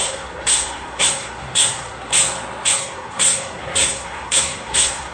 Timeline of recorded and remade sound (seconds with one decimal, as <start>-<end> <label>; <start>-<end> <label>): 0.0-2.1 remade; 2.1-2.7 recorded; 2.7-5.1 remade